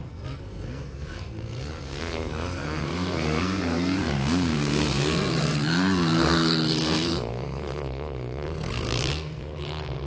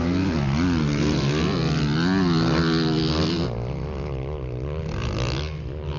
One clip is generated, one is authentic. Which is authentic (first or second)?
second